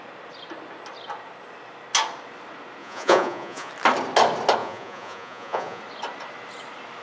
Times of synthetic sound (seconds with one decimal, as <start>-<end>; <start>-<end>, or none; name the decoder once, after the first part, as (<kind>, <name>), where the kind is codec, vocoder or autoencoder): 2.8-3.7 (vocoder, Vocos); 4.6-5.8